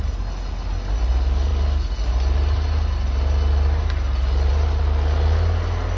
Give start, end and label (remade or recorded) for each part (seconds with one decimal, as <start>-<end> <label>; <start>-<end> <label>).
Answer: 0.0-6.0 recorded